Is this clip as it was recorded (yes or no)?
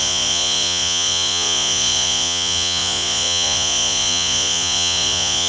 no